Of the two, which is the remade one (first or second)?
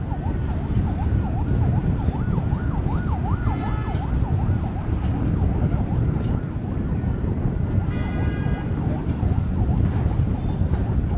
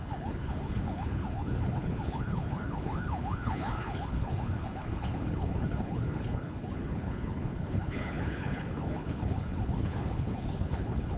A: second